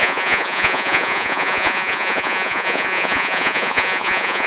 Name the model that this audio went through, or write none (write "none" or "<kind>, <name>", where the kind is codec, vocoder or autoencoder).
vocoder, Vocos